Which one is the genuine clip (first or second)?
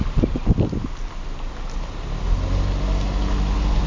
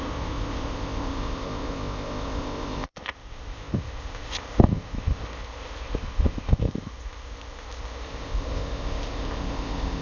first